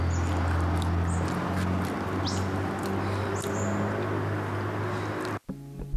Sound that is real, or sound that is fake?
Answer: real